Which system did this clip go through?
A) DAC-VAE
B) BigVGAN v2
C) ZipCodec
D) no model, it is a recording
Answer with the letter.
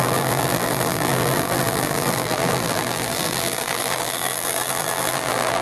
B